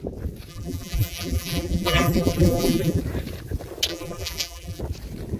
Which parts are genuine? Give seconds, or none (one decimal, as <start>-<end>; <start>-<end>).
0.0-0.5; 3.0-3.9; 4.8-5.4